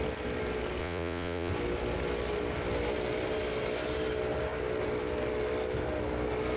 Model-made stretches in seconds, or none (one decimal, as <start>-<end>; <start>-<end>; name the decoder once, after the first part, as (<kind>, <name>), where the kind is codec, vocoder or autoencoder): 0.8-1.5 (vocoder, Vocos)